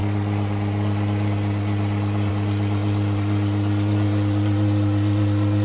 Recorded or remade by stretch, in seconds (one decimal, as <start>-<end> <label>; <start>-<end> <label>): 0.0-5.6 recorded